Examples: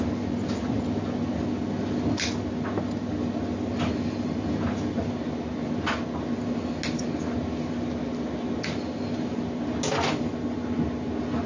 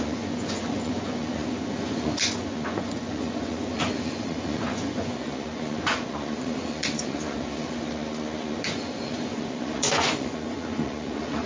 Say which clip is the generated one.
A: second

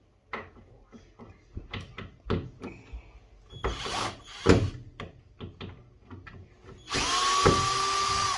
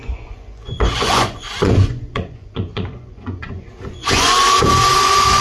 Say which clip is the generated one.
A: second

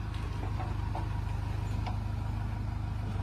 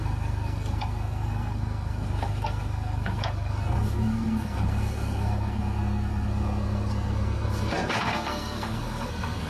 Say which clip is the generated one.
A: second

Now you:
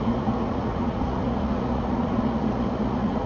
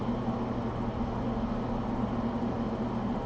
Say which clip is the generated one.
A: first